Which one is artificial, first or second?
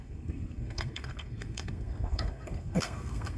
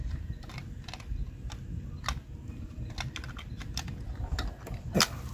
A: first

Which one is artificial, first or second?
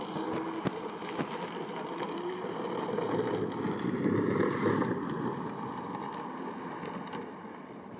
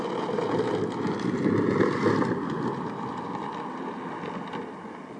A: first